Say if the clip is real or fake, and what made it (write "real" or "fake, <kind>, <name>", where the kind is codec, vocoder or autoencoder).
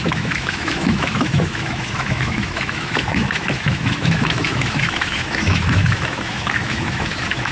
fake, autoencoder, DAC-VAE